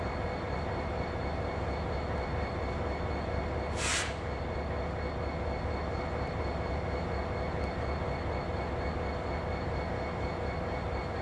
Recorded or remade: recorded